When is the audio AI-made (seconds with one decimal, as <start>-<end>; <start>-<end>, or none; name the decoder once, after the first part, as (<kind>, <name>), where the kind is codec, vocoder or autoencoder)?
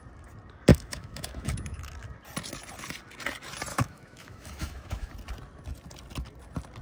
0.7-1.8 (autoencoder, DAC-VAE); 3.7-5.1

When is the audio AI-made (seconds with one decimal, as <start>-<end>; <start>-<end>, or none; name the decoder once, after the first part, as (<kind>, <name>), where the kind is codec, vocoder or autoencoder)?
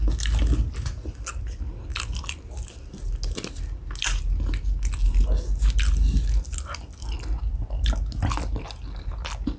none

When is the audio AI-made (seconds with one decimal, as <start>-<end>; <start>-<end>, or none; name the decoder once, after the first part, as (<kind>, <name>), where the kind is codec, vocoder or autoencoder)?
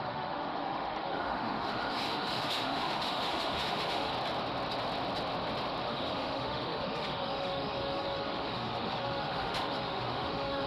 0.0-4.1 (autoencoder, DAC-VAE); 5.8-10.7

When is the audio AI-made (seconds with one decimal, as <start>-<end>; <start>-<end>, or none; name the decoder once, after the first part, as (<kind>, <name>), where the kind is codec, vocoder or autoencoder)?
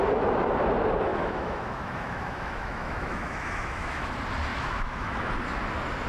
1.1-4.1 (autoencoder, DAC-VAE); 4.5-5.3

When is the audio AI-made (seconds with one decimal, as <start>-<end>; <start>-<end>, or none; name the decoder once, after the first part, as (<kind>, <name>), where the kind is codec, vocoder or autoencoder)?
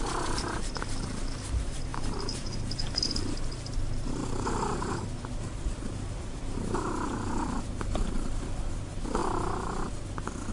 0.0-1.9 (vocoder, BigVGAN v2); 2.7-9.2